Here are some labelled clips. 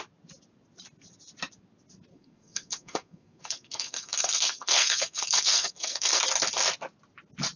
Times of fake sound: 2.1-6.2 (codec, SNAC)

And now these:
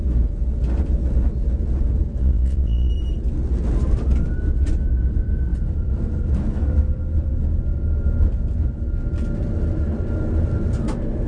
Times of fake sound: 2.2-2.9 (vocoder, Vocos)

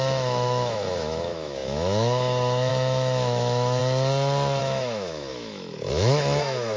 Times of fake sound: 0.0-3.8 (autoencoder, DAC-VAE); 4.6-6.8

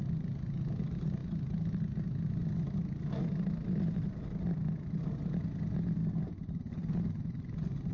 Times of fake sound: none

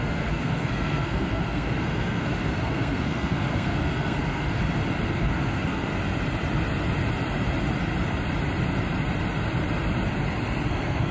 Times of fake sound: 0.0-4.6 (codec, SNAC); 5.1-5.9; 10.7-11.1

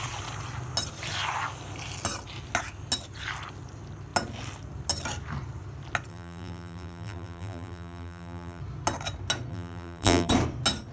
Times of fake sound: 6.1-8.6 (vocoder, BigVGAN v2); 9.5-10.3

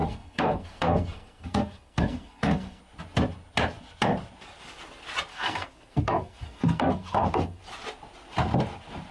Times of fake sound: 0.0-2.8 (codec, SNAC); 5.3-7.6

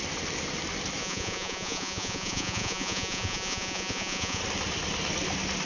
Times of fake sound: 1.0-4.4 (vocoder, Vocos)